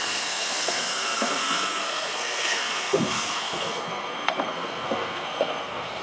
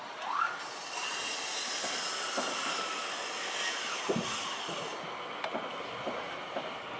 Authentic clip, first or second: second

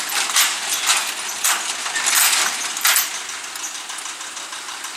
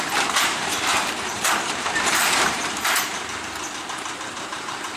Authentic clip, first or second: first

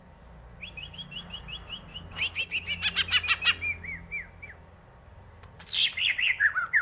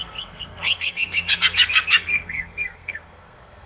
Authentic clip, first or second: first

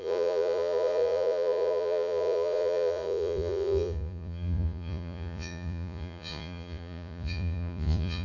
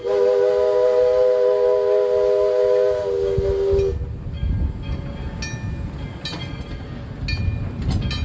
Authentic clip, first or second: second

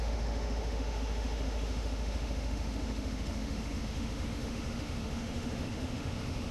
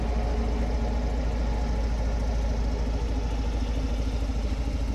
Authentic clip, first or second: second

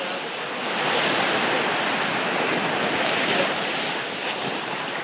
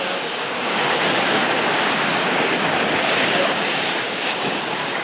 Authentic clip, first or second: first